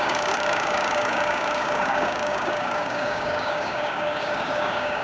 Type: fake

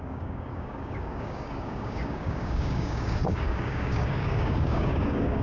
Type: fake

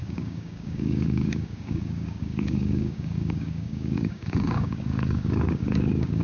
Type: fake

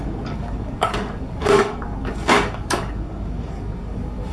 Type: fake